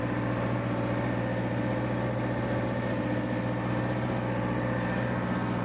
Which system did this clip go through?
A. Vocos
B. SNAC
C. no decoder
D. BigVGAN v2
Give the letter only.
C